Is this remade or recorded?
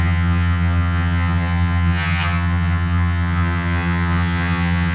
remade